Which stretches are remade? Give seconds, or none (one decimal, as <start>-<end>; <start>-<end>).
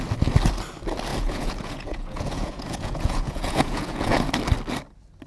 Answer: 1.1-4.3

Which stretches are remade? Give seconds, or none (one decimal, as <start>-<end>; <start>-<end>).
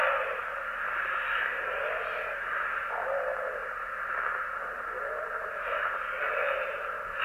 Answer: 3.6-7.2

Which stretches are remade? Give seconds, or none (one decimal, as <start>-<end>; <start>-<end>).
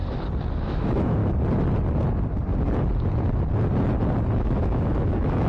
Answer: 0.6-1.2; 4.4-5.5